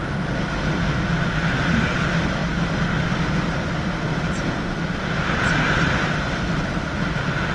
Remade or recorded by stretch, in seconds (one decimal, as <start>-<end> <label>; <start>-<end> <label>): 0.0-7.5 recorded